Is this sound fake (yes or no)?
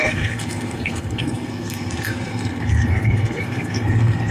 yes